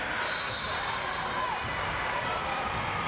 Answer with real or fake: real